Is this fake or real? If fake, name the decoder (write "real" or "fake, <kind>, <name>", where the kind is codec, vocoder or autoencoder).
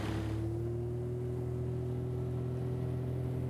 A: real